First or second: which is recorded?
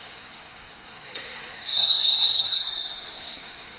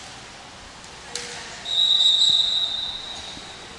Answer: second